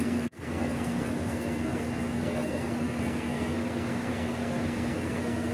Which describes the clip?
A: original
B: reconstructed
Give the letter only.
B